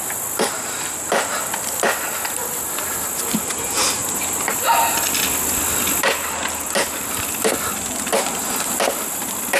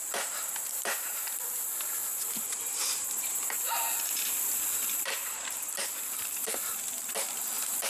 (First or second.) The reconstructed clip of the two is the second